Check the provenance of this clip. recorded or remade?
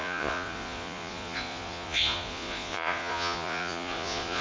remade